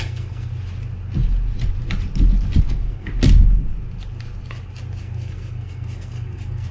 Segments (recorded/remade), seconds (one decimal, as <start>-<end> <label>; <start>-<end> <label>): 0.0-0.5 remade; 0.5-2.6 recorded; 2.6-3.1 remade; 3.1-5.0 recorded; 5.0-6.7 remade